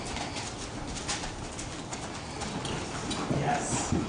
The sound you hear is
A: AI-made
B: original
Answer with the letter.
B